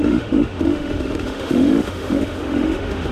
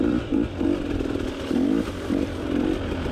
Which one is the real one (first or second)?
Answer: second